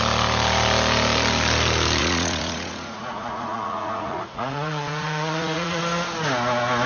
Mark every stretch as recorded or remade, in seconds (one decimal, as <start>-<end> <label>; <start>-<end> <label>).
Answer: 0.0-2.0 recorded; 2.0-5.8 remade; 5.8-6.9 recorded